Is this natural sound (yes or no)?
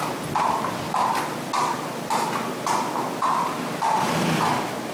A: yes